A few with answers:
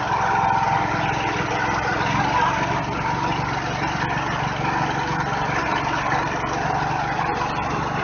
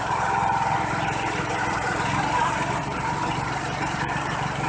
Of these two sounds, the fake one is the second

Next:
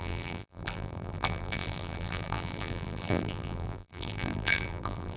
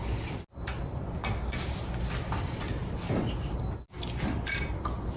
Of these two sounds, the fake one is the first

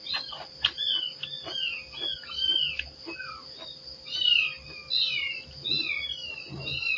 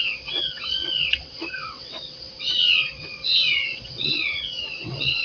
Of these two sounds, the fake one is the second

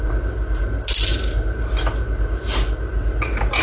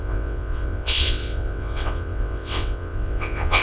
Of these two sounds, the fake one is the second